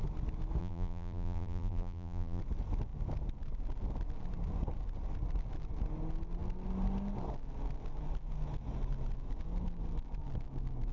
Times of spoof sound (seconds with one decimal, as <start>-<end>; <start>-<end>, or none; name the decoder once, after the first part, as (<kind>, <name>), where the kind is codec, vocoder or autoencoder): 0.6-2.4 (vocoder, BigVGAN v2)